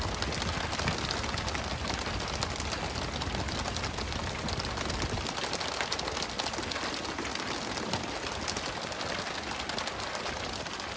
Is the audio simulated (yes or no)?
no